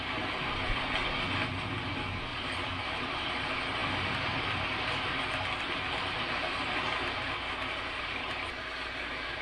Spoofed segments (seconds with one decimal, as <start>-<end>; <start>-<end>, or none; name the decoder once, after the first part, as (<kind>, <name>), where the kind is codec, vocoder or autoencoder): 2.3-3.3 (vocoder, BigVGAN v2); 3.8-8.2